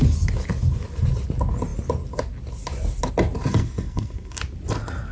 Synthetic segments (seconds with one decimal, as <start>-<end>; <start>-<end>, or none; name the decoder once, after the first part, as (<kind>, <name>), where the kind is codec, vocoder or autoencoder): 3.5-4.4 (codec, SNAC)